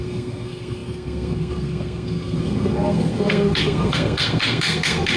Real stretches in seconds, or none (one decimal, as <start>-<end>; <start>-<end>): none

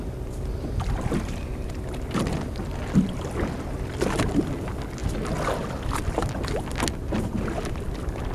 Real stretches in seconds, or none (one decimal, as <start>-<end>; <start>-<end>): 0.0-8.3